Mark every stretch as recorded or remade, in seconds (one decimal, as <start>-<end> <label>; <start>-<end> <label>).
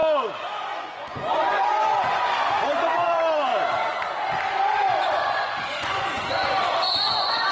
0.0-0.6 recorded; 0.6-3.5 remade; 3.5-4.5 recorded; 4.5-7.5 remade